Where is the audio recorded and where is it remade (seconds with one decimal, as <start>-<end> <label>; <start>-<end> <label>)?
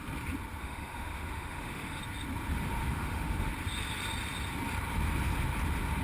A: 0.0-0.6 recorded; 0.6-2.0 remade; 2.0-2.8 recorded; 2.8-3.5 remade; 3.5-6.0 recorded